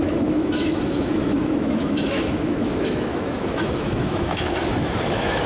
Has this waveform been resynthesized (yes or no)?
yes